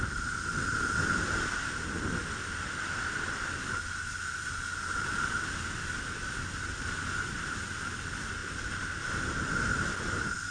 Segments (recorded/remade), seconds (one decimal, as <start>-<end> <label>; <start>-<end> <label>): 0.0-3.6 recorded; 3.6-5.2 remade; 5.2-8.4 recorded; 8.4-9.9 remade; 9.9-10.5 recorded